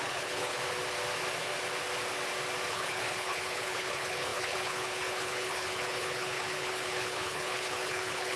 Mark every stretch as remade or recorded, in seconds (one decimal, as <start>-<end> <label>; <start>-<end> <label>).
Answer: 0.0-0.6 remade; 0.6-2.7 recorded; 2.7-8.4 remade